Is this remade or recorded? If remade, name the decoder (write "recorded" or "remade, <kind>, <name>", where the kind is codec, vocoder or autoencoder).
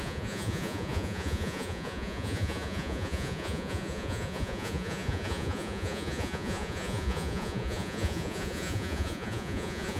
remade, vocoder, Vocos